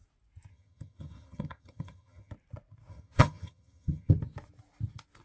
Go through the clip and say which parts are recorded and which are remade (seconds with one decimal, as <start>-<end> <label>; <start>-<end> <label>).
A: 0.0-0.5 recorded; 0.5-2.3 remade; 2.3-2.9 recorded; 2.9-4.1 remade; 4.1-5.2 recorded